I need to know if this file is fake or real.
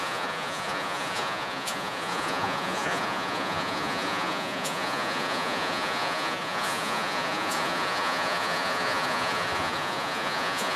fake